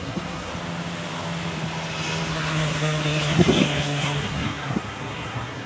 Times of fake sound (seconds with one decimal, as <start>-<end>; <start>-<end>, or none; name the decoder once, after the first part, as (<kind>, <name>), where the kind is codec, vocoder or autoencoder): 0.0-0.5 (codec, SNAC); 2.3-5.7